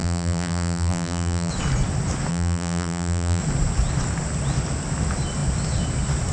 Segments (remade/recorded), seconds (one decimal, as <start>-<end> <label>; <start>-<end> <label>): 0.0-1.5 remade; 1.5-2.3 recorded; 2.3-3.4 remade; 3.4-6.3 recorded